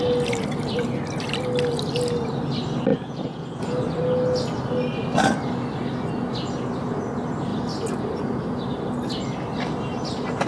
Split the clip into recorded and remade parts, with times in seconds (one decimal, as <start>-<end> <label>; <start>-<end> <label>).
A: 0.0-2.9 recorded; 2.9-3.6 remade; 3.6-10.5 recorded